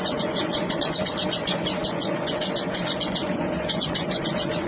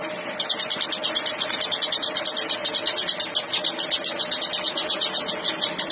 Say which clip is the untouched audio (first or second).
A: second